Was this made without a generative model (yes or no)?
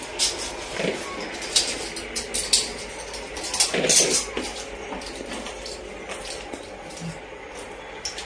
yes